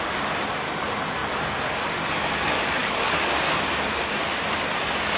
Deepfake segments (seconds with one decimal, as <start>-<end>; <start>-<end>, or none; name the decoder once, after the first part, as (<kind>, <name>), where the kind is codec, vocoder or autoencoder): 2.8-3.7 (codec, DAC)